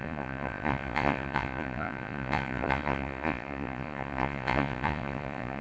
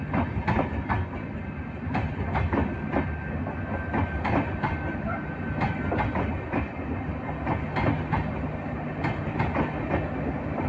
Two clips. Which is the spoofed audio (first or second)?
first